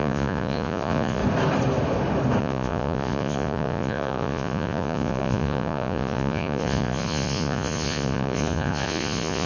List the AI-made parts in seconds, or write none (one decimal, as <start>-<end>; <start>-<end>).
0.0-1.2; 2.4-9.5